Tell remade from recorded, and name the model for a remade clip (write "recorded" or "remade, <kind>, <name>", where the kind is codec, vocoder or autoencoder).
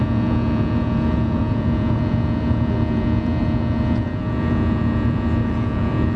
remade, vocoder, Vocos